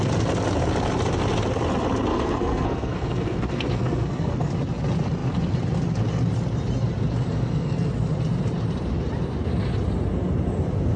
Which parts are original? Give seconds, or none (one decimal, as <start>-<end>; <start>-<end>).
0.0-2.1; 4.5-7.3; 7.9-11.0